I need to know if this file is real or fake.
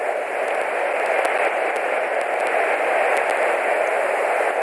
real